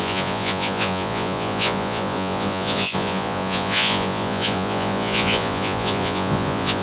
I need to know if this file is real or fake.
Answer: fake